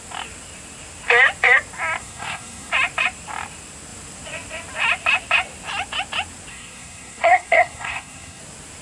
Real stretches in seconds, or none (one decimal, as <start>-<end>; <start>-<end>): 0.0-2.0; 2.7-6.5; 8.4-8.8